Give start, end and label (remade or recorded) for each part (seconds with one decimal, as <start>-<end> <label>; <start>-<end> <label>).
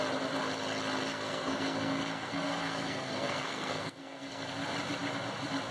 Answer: 0.0-1.1 recorded; 1.1-4.5 remade; 4.5-5.7 recorded